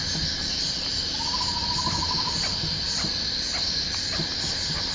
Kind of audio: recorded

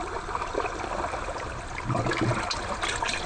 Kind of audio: recorded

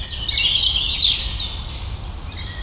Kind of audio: recorded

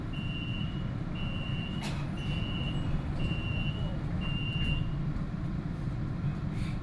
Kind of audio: remade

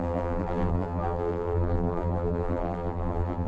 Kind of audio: remade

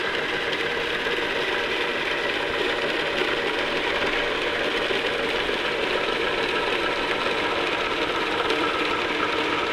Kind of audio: recorded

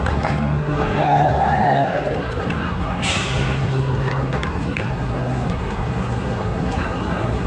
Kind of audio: remade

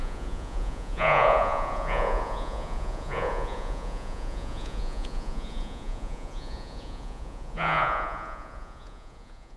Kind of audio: remade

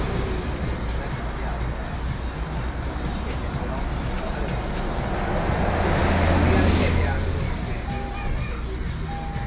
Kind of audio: recorded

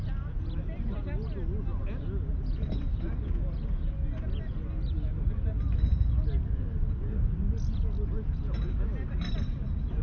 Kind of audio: recorded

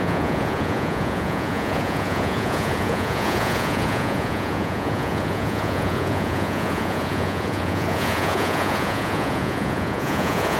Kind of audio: remade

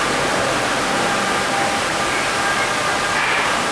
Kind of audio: recorded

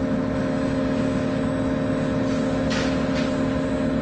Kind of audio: recorded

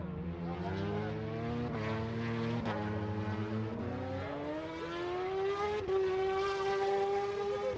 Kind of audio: recorded